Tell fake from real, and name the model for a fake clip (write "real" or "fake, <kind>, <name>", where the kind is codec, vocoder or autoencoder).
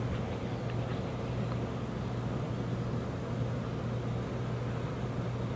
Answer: real